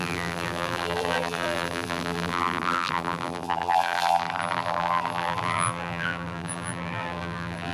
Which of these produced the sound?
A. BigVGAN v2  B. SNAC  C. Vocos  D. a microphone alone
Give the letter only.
A